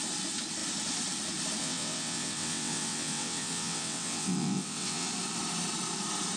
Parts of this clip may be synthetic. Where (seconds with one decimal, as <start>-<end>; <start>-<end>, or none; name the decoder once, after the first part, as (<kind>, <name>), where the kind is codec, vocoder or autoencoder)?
1.6-5.1 (vocoder, WaveNeXt)